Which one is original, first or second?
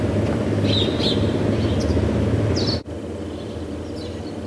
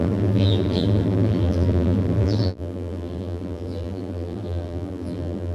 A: first